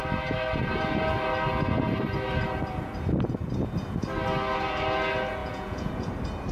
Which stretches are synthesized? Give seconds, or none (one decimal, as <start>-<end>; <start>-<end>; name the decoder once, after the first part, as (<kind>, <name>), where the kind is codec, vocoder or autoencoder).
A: 5.4-6.1 (vocoder, Vocos)